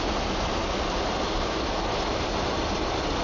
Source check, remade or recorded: recorded